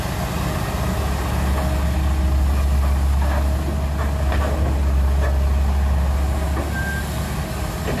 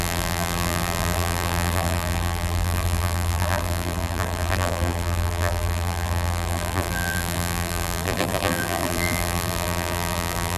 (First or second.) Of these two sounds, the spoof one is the second